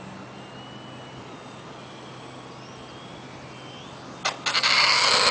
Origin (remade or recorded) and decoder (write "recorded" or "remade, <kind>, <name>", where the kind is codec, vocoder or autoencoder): recorded